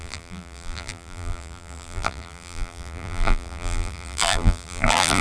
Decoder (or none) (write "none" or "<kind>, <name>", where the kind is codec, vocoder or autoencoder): vocoder, BigVGAN v2